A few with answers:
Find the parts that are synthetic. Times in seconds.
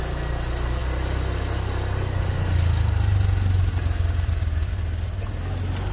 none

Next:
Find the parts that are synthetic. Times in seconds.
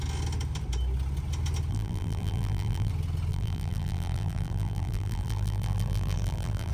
1.7-2.9 (vocoder, BigVGAN v2); 3.3-6.7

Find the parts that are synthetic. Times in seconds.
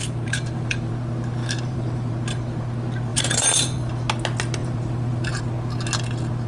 0.0-0.9 (vocoder, BigVGAN v2); 1.4-2.1; 3.1-3.9; 4.6-5.4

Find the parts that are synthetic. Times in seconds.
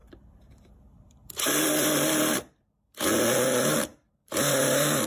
0.0-3.1 (vocoder, BigVGAN v2); 3.9-5.1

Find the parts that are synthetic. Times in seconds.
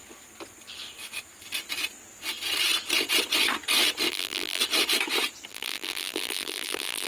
4.1-4.6 (vocoder, BigVGAN v2); 5.5-7.1